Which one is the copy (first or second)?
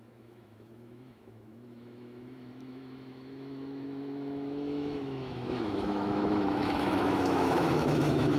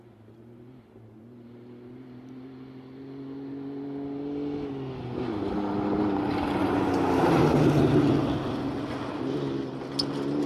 first